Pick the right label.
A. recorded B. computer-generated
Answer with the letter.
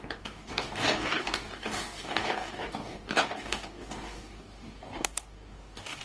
B